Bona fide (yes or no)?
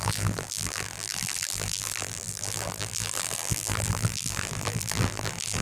no